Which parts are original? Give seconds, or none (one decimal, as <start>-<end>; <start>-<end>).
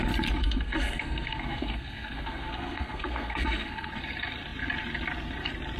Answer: 0.0-0.4; 3.9-5.8